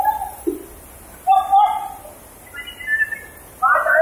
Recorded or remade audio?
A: recorded